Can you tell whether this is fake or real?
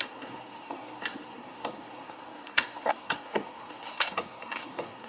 fake